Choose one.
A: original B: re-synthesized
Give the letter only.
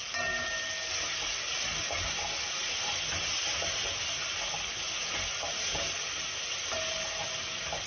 A